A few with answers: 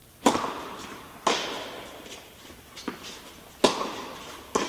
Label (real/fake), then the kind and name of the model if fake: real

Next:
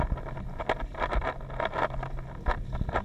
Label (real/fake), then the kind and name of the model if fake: real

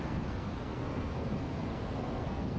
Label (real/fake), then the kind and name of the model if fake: fake, codec, SNAC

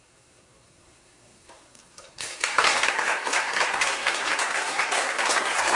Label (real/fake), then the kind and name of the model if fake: fake, codec, SNAC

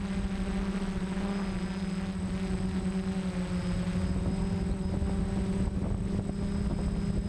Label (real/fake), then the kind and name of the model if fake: real